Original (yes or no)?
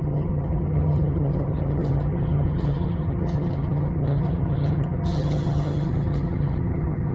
no